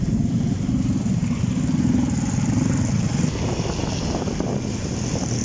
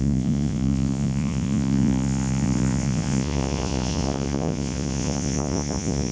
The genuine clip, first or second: first